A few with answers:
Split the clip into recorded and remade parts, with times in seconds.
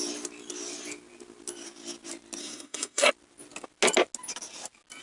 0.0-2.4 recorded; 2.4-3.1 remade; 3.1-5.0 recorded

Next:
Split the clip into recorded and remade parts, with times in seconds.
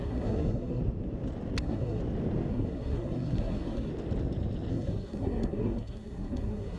0.0-0.8 remade; 0.8-1.6 recorded; 1.6-2.0 remade; 2.0-2.5 recorded; 2.5-3.9 remade; 3.9-4.7 recorded; 4.7-6.8 remade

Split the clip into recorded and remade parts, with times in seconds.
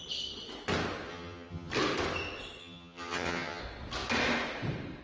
0.0-1.1 recorded; 1.1-1.7 remade; 1.7-2.6 recorded; 2.6-3.6 remade; 3.6-5.0 recorded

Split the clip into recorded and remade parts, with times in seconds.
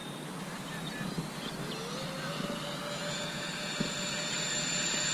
0.0-3.1 recorded; 3.1-5.1 remade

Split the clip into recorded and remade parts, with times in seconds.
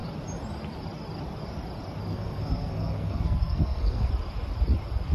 0.0-2.1 recorded; 2.1-4.1 remade; 4.1-5.1 recorded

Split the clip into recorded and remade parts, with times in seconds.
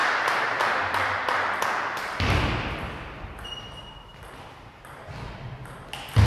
0.0-6.3 recorded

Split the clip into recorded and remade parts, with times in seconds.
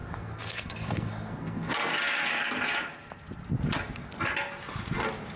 0.0-1.9 remade; 1.9-5.4 recorded